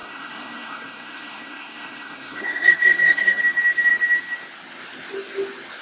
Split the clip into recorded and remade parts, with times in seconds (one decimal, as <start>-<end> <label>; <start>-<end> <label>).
0.0-3.4 remade; 3.4-5.8 recorded